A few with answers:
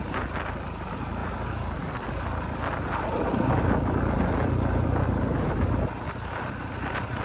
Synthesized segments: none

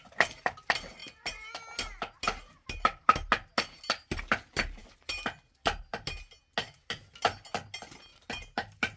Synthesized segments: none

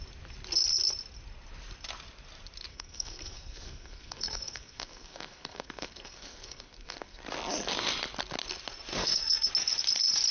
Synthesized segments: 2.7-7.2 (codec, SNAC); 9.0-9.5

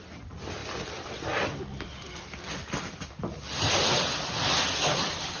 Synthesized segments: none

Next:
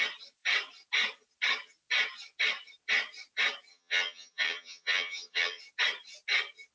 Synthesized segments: 3.7-5.6 (vocoder, HiFi-GAN)

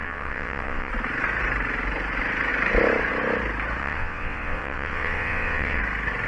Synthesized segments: 0.0-0.9 (vocoder, WaveNeXt); 3.8-5.8